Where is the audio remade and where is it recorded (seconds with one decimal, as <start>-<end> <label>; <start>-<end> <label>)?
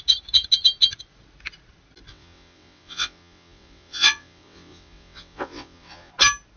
0.0-2.1 recorded; 2.1-6.1 remade; 6.1-6.6 recorded